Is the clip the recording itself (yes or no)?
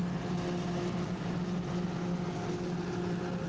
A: yes